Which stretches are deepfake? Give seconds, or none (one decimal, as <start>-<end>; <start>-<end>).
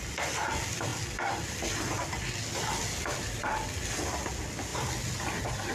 none